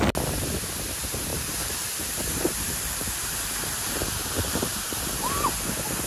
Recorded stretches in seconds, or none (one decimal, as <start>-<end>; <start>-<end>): 0.0-1.3; 5.0-6.1